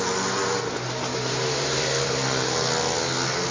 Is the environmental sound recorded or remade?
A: recorded